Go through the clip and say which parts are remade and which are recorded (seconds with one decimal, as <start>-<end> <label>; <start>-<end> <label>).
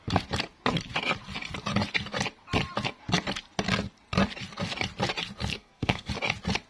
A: 0.0-5.5 recorded; 5.5-6.1 remade; 6.1-6.7 recorded